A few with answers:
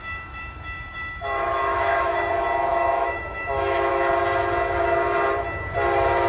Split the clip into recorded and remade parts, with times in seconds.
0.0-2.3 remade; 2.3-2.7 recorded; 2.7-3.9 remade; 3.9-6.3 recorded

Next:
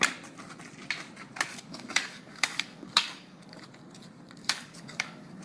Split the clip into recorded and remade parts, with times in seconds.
0.0-1.5 recorded; 1.5-3.6 remade; 3.6-4.4 recorded; 4.4-5.4 remade

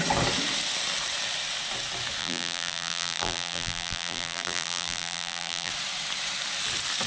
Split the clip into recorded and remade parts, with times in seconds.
0.0-2.2 recorded; 2.2-5.7 remade; 5.7-7.1 recorded

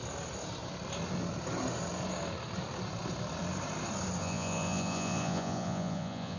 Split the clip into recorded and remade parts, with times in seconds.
0.0-4.2 recorded; 4.2-6.4 remade

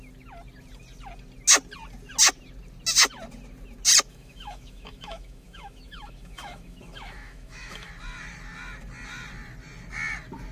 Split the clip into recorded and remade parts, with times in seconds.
0.0-4.1 recorded; 4.1-7.9 remade; 7.9-10.5 recorded

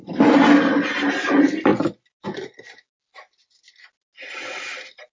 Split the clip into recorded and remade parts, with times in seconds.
0.0-5.1 recorded